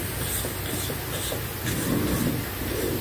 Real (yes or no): yes